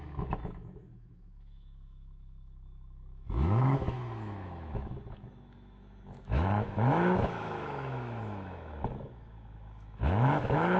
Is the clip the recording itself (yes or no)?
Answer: no